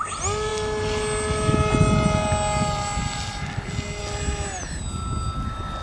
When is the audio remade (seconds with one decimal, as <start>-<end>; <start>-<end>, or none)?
none